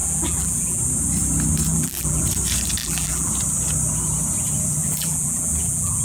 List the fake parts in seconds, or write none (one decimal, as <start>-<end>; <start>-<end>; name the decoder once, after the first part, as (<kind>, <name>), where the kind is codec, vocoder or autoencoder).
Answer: 0.0-0.8 (vocoder, BigVGAN v2); 1.7-2.2; 2.8-3.3; 4.8-6.0